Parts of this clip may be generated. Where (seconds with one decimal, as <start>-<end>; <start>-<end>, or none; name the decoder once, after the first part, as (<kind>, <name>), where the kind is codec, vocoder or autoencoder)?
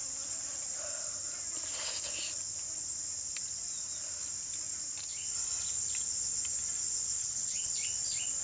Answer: 7.2-7.7 (vocoder, HiFi-GAN)